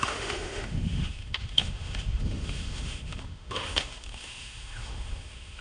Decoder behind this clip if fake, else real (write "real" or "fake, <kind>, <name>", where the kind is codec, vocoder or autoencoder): fake, autoencoder, DAC-VAE